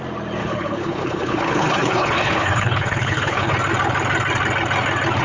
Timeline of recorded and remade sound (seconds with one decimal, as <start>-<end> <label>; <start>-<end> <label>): 0.0-0.4 recorded; 0.4-3.5 remade; 3.5-5.2 recorded